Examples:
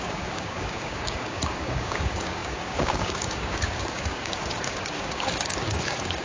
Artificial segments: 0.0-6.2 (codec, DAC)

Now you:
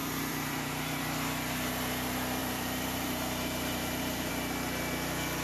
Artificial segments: 0.0-1.0 (vocoder, BigVGAN v2); 2.4-4.3

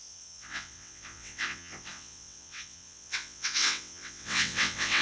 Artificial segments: 0.0-5.0 (vocoder, WaveNeXt)

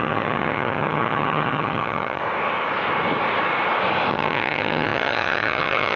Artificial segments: 0.0-2.2 (vocoder, HiFi-GAN); 4.1-6.0